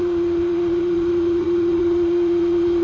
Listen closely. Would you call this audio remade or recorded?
remade